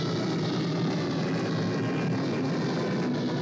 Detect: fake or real real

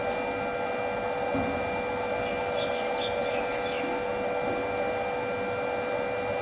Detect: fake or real real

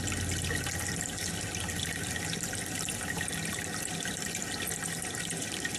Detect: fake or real real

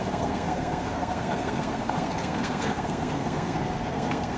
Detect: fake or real fake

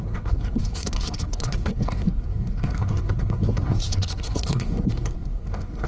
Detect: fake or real fake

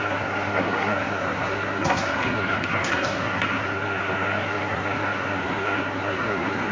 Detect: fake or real fake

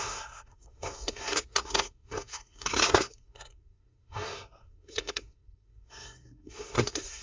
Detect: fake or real fake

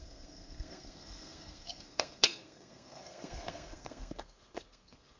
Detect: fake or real fake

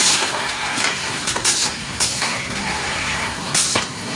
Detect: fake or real fake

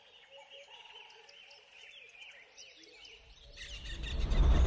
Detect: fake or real real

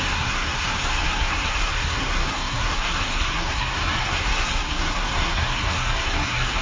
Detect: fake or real fake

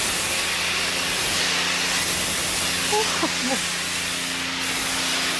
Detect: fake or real real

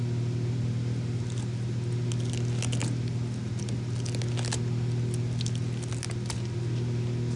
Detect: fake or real real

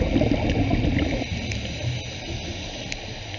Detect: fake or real real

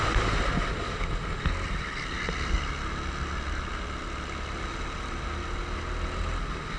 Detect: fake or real real